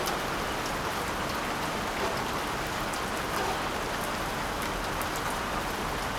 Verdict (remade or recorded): recorded